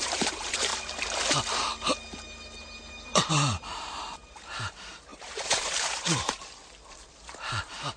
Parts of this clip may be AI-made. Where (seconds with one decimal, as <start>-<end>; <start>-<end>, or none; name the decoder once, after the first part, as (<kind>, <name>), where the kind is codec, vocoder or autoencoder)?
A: 0.0-0.7 (vocoder, BigVGAN v2); 3.3-6.6